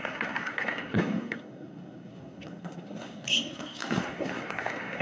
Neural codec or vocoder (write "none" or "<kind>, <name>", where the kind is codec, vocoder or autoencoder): codec, SNAC